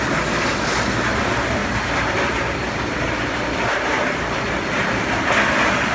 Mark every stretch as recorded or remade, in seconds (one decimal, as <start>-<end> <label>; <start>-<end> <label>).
0.0-1.6 recorded; 1.6-5.1 remade; 5.1-5.9 recorded